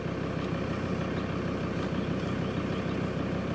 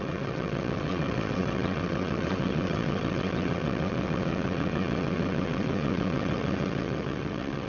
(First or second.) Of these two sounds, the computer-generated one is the second